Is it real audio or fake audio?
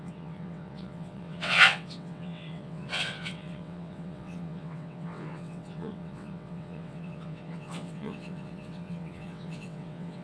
fake